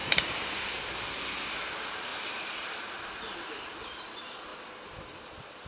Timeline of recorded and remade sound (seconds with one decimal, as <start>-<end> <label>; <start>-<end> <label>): 0.0-0.9 remade; 0.9-2.1 recorded; 2.1-3.1 remade; 3.1-5.7 recorded